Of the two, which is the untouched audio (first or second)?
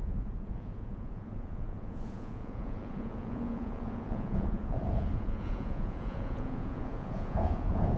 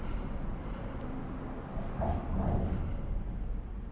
second